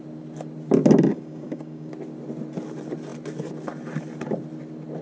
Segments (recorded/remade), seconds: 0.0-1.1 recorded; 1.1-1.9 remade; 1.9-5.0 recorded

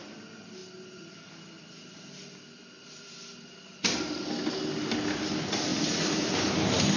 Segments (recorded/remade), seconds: 0.0-7.0 recorded

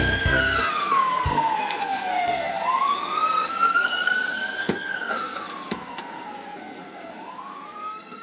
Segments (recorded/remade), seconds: 0.0-8.2 remade

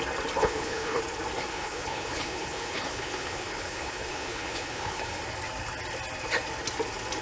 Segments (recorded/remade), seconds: 0.0-0.4 recorded; 0.4-1.0 remade; 1.0-1.5 recorded; 1.5-5.2 remade; 5.2-7.2 recorded

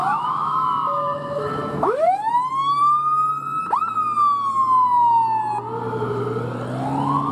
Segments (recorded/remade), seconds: 0.0-2.3 remade; 2.3-7.3 recorded

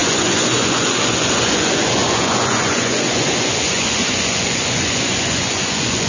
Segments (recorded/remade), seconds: 0.0-6.1 remade

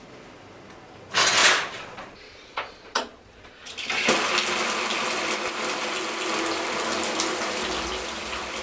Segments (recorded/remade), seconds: 0.0-1.4 recorded; 1.4-3.7 remade; 3.7-8.6 recorded